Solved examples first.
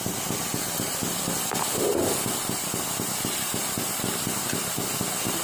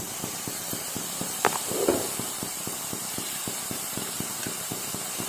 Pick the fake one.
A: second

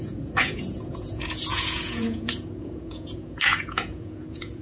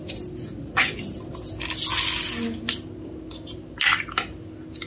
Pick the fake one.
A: first